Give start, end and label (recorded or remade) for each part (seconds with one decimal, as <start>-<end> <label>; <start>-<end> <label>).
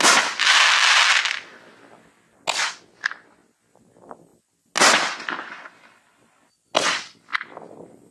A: 0.0-8.1 recorded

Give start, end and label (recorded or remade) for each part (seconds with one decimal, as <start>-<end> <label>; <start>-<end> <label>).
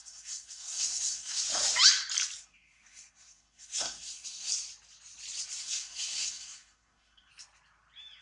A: 0.0-1.4 remade; 1.4-2.4 recorded; 2.4-4.5 remade; 4.5-5.6 recorded; 5.6-7.3 remade; 7.3-8.2 recorded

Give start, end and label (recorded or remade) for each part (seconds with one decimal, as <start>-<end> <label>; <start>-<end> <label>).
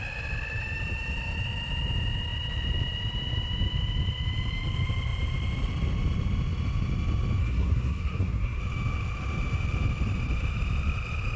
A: 0.0-7.4 recorded; 7.4-8.6 remade; 8.6-11.4 recorded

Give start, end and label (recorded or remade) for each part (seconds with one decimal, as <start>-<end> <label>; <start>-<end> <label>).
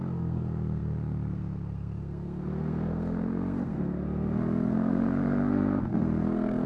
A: 0.0-6.7 remade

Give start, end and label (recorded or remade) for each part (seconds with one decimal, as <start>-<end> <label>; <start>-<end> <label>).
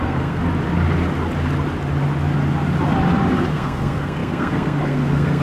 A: 0.0-0.4 remade; 0.4-3.5 recorded; 3.5-5.4 remade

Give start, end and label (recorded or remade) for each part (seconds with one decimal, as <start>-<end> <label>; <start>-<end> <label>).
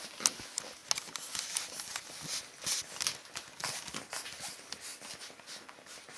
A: 0.0-6.2 recorded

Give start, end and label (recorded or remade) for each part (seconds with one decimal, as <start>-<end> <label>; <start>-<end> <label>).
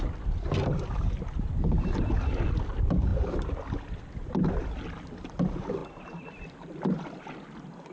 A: 0.0-7.9 recorded